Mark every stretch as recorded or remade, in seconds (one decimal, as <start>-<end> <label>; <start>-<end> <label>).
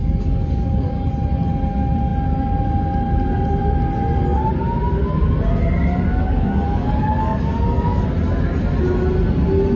0.0-1.1 remade; 1.1-6.1 recorded; 6.1-8.0 remade; 8.0-9.8 recorded